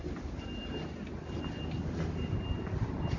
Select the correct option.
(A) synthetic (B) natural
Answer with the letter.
B